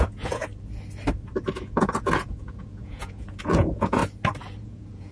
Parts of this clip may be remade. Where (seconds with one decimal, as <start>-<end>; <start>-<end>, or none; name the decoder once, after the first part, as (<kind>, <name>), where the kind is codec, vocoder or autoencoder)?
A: 0.0-0.4 (vocoder, Vocos); 1.5-4.0; 4.6-5.1